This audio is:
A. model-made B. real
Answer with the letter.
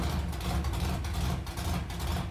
B